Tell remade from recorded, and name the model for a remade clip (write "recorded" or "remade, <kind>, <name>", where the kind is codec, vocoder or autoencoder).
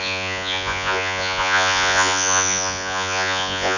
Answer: remade, vocoder, Vocos